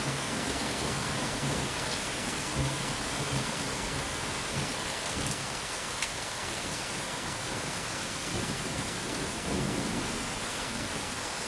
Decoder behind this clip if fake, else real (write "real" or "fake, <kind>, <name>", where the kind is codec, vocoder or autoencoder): fake, codec, SNAC